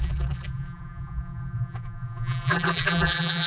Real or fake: fake